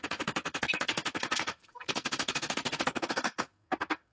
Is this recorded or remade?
remade